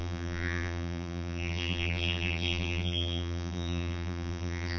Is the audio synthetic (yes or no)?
yes